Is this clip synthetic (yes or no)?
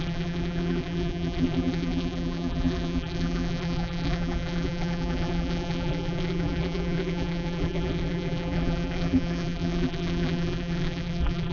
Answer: yes